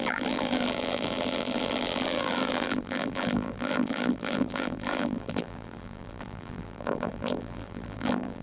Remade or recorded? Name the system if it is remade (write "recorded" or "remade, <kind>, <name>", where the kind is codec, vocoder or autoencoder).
remade, vocoder, BigVGAN v2